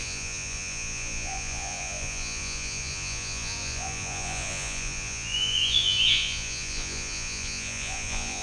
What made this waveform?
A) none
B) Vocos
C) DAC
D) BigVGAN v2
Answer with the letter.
B